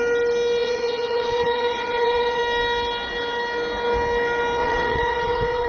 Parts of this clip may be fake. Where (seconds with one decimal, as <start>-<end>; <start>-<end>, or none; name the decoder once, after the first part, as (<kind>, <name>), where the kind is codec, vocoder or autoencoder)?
0.6-2.4 (vocoder, WaveNeXt); 4.6-5.7

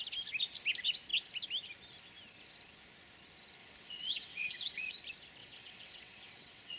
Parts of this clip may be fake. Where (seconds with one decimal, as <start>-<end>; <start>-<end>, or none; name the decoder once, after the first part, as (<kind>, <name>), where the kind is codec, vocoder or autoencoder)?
3.6-4.9 (vocoder, WaveNeXt); 5.4-6.8

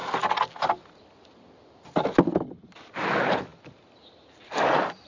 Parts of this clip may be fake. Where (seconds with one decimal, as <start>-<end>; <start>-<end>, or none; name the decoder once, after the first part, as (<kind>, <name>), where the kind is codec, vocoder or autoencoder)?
none

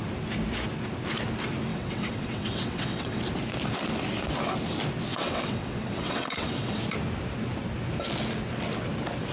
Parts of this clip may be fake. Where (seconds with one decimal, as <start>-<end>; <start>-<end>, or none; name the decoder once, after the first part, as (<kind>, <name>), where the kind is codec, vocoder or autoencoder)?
1.7-3.2 (vocoder, WaveNeXt); 5.1-6.8

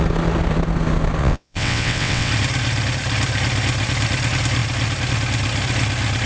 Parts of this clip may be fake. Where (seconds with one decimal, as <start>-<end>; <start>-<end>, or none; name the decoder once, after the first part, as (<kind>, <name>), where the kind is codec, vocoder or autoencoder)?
1.2-2.3 (vocoder, WaveNeXt)